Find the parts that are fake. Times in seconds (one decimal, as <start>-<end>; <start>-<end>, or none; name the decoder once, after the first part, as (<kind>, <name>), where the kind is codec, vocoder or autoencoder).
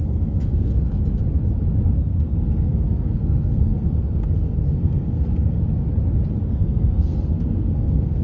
0.0-1.2 (codec, SNAC); 1.8-5.6; 6.5-8.2